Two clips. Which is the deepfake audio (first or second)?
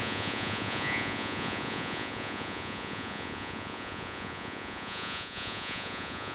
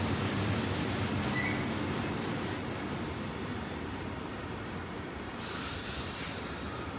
first